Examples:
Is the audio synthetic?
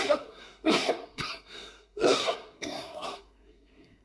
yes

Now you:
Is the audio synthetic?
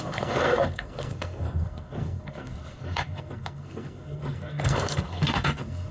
yes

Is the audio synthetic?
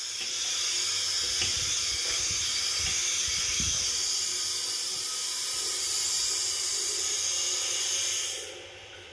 no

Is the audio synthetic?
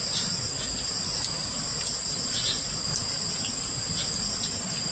no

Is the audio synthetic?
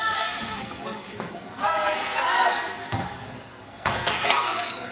yes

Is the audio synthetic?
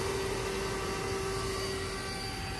no